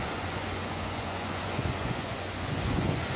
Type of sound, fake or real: fake